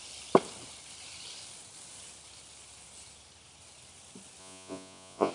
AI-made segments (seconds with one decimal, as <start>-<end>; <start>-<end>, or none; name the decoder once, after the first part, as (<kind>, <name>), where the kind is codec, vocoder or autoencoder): 4.4-5.3 (vocoder, Vocos)